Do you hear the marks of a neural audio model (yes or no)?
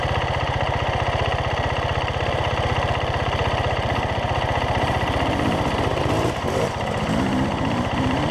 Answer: yes